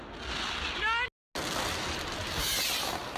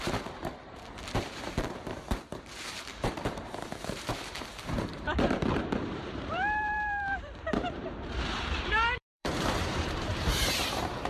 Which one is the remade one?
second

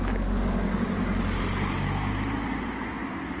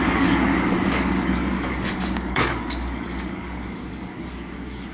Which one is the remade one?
second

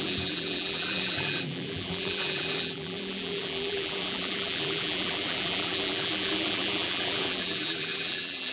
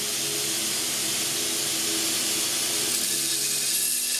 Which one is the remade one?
first